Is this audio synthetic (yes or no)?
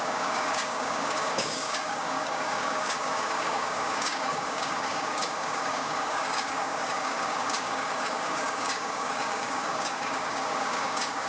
yes